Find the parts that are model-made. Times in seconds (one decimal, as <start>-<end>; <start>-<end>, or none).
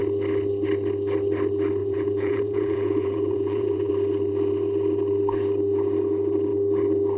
1.8-3.9